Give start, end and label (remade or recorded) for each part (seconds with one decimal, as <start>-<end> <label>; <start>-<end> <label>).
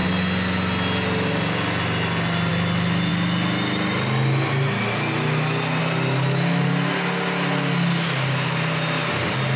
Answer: 0.0-9.6 recorded